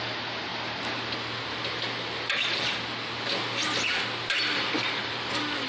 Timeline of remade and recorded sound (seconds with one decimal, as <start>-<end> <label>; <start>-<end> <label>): 0.0-4.5 recorded; 4.5-5.3 remade; 5.3-5.7 recorded

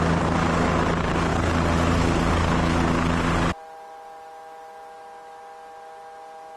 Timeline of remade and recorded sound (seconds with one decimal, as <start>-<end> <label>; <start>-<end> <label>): 0.0-6.6 recorded

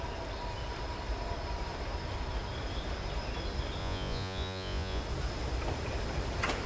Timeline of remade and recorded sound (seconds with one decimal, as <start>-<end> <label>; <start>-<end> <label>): 0.0-3.8 recorded; 3.8-5.0 remade; 5.0-6.7 recorded

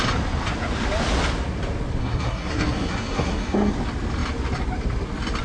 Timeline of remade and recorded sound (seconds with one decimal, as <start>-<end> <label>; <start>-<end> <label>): 0.0-2.0 recorded; 2.0-3.7 remade; 3.7-5.4 recorded

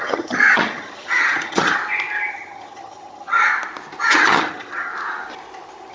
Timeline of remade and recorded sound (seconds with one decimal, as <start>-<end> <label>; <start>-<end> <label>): 0.0-1.8 remade; 1.8-2.3 recorded; 2.3-3.5 remade; 3.5-4.0 recorded; 4.0-4.9 remade; 4.9-5.9 recorded

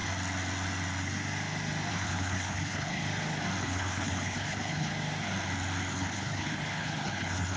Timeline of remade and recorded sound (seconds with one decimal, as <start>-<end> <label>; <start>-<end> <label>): 0.0-1.9 recorded; 1.9-3.0 remade; 3.0-3.6 recorded; 3.6-4.9 remade; 4.9-5.9 recorded; 5.9-7.6 remade

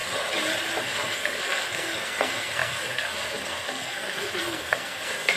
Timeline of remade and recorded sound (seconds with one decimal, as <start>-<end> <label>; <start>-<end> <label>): 0.0-0.8 recorded; 0.8-5.4 remade

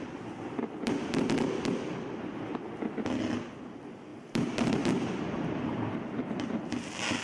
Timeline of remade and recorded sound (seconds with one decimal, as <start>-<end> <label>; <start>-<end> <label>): 0.0-7.2 recorded